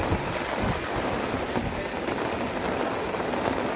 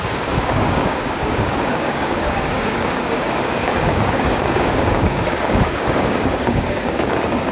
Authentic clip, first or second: first